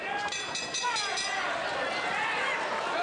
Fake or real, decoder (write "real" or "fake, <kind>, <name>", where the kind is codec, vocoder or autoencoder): real